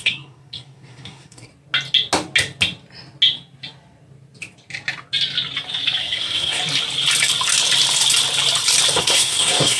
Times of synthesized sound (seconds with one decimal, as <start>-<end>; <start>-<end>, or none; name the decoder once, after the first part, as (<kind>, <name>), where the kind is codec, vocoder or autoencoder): 0.0-1.5 (codec, SNAC); 6.0-6.6; 9.0-9.8